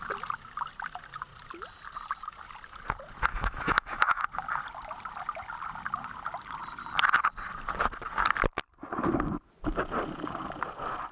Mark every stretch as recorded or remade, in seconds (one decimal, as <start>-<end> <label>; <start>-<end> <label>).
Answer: 0.0-3.3 recorded; 3.3-4.2 remade; 4.2-11.1 recorded